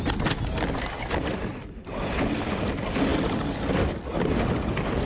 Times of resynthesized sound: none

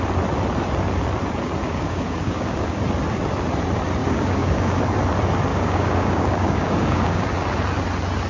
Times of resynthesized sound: 1.6-2.8 (codec, DAC); 4.0-4.8; 5.5-7.2

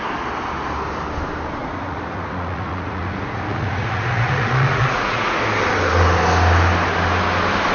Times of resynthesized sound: 1.6-5.4 (vocoder, Vocos)

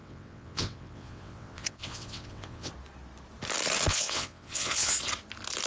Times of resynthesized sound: 0.0-2.7 (vocoder, WaveNeXt); 3.9-4.9